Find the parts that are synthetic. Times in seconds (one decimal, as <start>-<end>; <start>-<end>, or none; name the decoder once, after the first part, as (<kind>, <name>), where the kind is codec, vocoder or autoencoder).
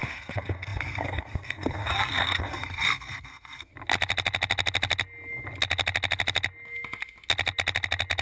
0.0-3.7 (codec, SNAC)